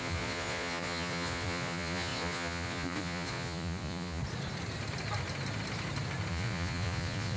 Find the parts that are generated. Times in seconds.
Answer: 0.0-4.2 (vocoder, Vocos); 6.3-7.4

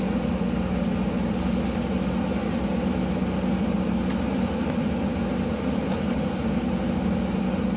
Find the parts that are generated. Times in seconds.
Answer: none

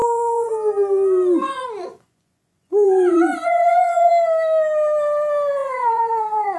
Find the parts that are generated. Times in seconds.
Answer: 0.0-0.5 (vocoder, Vocos); 1.4-4.1; 5.6-6.6

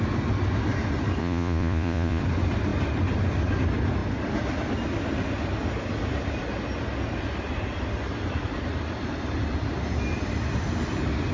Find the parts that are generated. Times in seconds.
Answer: 1.2-2.2 (vocoder, Vocos)

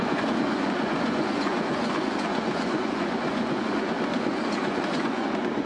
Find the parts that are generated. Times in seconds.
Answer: 0.0-5.7 (vocoder, Vocos)